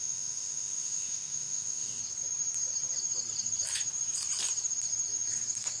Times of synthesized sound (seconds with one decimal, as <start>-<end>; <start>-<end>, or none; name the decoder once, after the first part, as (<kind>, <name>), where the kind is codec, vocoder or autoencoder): 0.0-2.0 (autoencoder, DAC-VAE)